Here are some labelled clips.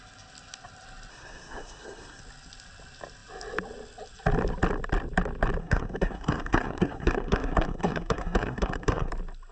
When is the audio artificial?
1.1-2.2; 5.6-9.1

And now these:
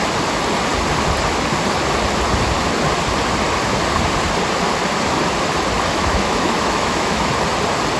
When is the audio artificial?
5.9-7.3